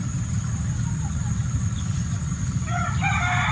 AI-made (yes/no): no